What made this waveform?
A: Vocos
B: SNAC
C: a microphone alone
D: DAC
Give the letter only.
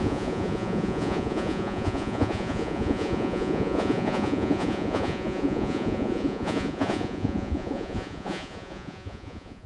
A